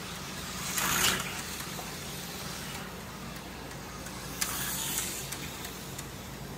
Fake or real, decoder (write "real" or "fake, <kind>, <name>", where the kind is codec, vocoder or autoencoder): real